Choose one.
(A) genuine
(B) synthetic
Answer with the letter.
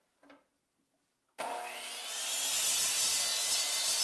A